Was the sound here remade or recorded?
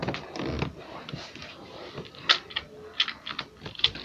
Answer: recorded